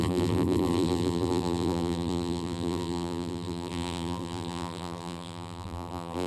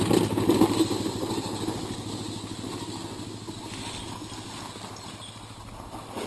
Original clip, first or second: second